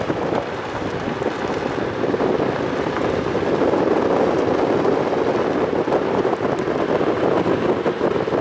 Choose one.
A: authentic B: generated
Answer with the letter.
A